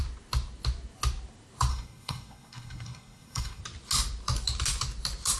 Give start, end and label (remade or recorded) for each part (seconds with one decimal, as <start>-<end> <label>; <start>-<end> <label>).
0.0-1.7 recorded; 1.7-3.6 remade; 3.6-5.4 recorded